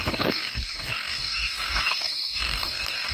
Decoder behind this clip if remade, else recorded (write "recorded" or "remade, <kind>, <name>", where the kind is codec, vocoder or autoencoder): remade, codec, DAC